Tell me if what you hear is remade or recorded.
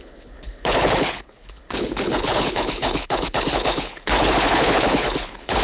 remade